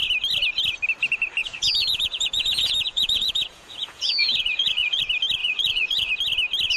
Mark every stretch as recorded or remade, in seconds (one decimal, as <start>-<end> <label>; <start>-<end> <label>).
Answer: 0.0-1.4 recorded; 1.4-5.0 remade; 5.0-5.4 recorded; 5.4-6.1 remade; 6.1-6.8 recorded